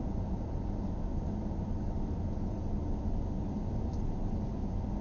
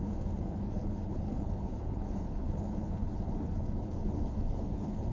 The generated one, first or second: second